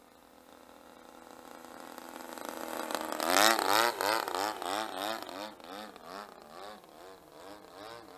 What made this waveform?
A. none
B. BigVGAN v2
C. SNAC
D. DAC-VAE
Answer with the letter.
A